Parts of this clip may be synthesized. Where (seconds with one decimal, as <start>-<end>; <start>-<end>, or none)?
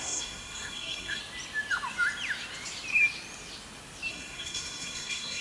0.0-1.2; 4.1-5.4